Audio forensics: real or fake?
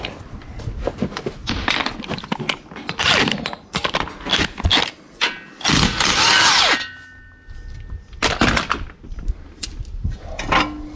real